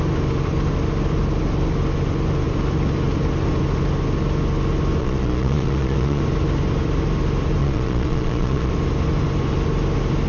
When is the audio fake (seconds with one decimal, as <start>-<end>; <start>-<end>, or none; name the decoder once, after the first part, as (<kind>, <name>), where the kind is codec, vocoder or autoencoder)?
5.0-6.2 (vocoder, Vocos); 7.6-8.7